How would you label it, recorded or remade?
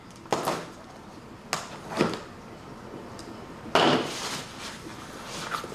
recorded